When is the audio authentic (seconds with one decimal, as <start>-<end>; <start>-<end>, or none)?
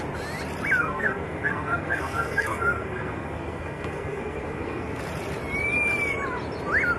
0.0-0.8; 5.0-7.0